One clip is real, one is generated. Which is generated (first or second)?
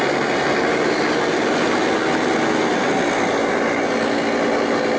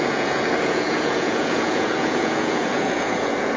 second